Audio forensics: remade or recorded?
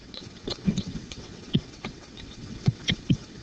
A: remade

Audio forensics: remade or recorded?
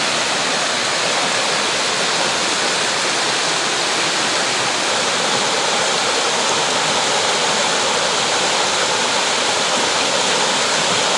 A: recorded